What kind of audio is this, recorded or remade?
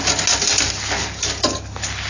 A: recorded